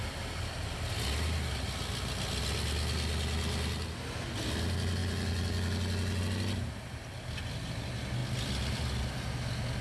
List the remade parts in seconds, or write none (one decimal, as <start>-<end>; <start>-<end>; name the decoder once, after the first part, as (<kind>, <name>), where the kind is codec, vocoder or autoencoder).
none